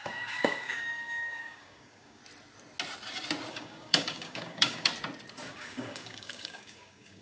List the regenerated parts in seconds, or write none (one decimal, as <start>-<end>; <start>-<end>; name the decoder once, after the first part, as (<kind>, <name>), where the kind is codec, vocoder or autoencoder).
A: 0.0-2.2 (codec, DAC); 3.5-4.9; 5.5-7.2